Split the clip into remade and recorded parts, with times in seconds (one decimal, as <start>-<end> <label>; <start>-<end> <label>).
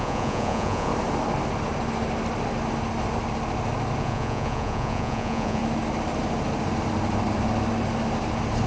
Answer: 0.0-0.9 remade; 0.9-4.0 recorded; 4.0-5.6 remade; 5.6-8.7 recorded